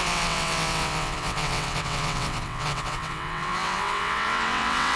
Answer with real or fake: fake